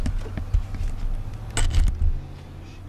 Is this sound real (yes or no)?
yes